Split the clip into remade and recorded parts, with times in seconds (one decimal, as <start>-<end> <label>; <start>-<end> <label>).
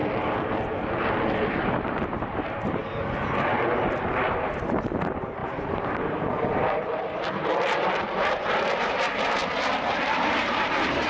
0.0-1.5 recorded; 1.5-2.8 remade; 2.8-4.0 recorded; 4.0-9.4 remade; 9.4-10.1 recorded; 10.1-11.1 remade